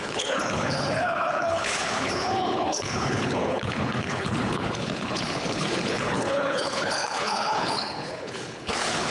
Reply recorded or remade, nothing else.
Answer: remade